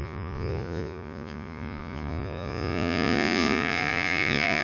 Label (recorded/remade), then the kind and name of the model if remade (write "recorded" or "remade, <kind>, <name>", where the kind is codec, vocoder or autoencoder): remade, vocoder, Vocos